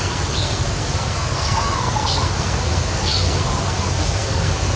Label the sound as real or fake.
fake